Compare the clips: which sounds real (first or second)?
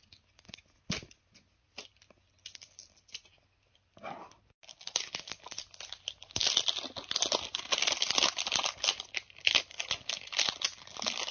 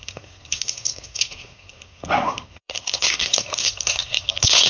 first